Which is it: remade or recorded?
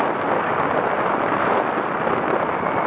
recorded